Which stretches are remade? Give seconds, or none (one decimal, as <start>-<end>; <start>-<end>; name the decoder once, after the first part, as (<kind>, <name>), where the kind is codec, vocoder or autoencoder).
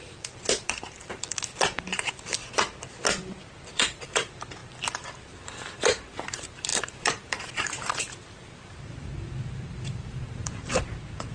0.0-2.4 (vocoder, BigVGAN v2); 3.7-11.3